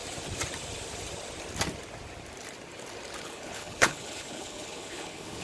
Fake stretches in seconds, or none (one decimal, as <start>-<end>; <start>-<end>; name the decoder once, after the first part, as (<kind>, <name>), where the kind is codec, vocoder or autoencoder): 3.2-5.4 (codec, HILCodec)